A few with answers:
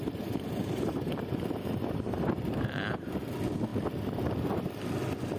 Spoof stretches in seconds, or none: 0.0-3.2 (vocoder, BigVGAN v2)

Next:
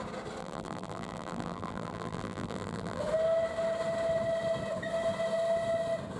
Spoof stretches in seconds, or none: 0.4-3.0 (vocoder, BigVGAN v2)